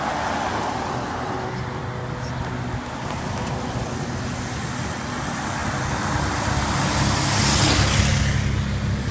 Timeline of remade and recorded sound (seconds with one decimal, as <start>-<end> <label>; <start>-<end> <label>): 0.0-9.1 recorded